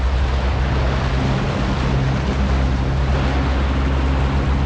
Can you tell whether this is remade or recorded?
recorded